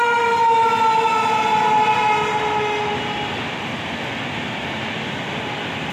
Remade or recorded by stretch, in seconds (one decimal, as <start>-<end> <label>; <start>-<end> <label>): 0.0-5.9 recorded